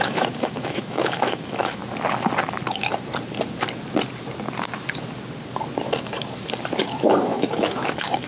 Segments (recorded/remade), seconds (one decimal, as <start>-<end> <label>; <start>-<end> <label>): 0.0-1.8 remade; 1.8-6.8 recorded; 6.8-8.3 remade